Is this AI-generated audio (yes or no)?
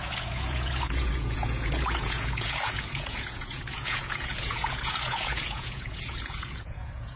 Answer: yes